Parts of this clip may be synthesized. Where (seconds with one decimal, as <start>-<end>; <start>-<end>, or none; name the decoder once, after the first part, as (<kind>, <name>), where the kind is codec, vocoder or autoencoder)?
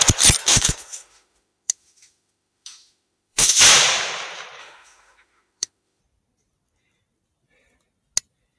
0.4-3.6 (autoencoder, DAC-VAE); 4.6-6.0